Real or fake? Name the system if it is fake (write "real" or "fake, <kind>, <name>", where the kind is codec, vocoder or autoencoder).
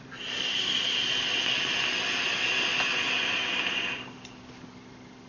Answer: real